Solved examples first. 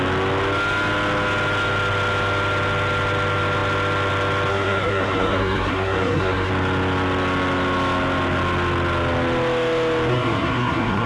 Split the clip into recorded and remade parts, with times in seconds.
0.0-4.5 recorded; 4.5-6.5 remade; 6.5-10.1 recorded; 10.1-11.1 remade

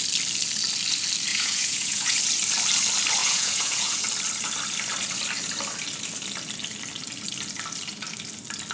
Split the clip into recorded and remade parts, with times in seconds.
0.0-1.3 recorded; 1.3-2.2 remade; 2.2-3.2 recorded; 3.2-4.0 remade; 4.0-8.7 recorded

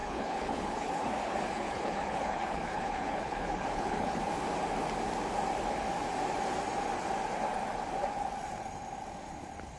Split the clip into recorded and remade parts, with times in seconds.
0.0-4.2 remade; 4.2-9.8 recorded

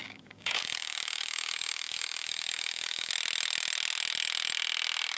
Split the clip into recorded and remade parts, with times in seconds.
0.0-3.1 remade; 3.1-5.2 recorded

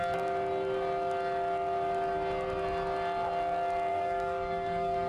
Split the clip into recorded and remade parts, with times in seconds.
0.0-3.9 recorded; 3.9-5.1 remade

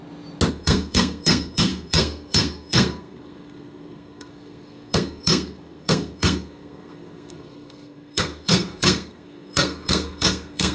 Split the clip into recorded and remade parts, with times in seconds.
0.0-0.5 recorded; 0.5-10.7 remade

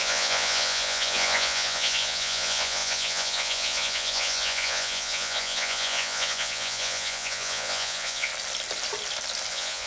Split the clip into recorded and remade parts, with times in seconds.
0.0-8.3 remade; 8.3-9.5 recorded; 9.5-9.9 remade